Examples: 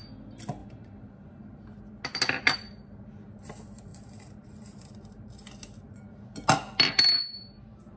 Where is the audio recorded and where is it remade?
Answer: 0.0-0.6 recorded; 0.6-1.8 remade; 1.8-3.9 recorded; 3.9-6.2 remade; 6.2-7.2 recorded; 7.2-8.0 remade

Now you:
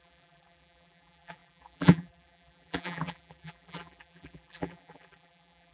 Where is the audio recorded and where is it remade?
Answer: 0.0-5.7 remade

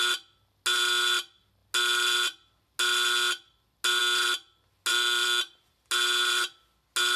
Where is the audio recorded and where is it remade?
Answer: 0.0-4.9 recorded; 4.9-5.9 remade; 5.9-7.2 recorded

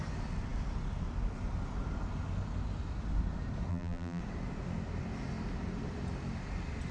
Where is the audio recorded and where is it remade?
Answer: 0.0-3.7 recorded; 3.7-4.2 remade; 4.2-6.9 recorded

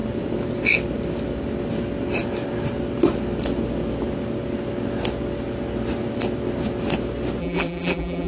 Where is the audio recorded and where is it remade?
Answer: 0.0-7.4 recorded; 7.4-8.3 remade

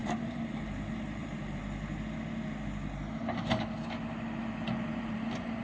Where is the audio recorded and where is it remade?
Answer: 0.0-1.6 remade; 1.6-5.0 recorded; 5.0-5.6 remade

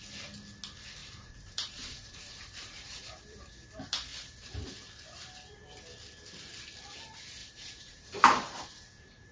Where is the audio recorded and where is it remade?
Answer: 0.0-1.0 recorded; 1.0-3.5 remade; 3.5-7.4 recorded; 7.4-8.7 remade; 8.7-9.3 recorded

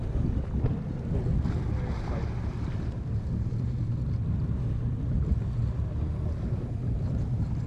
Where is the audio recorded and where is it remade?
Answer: 0.0-7.7 recorded